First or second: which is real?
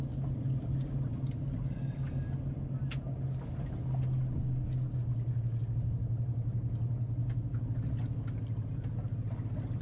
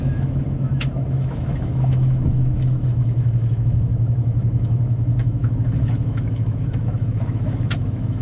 first